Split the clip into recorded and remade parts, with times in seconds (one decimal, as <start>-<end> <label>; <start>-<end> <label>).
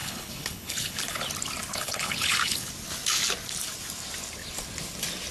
0.0-1.2 remade; 1.2-1.7 recorded; 1.7-2.7 remade; 2.7-5.3 recorded